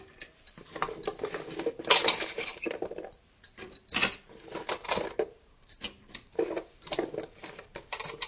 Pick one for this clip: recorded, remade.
remade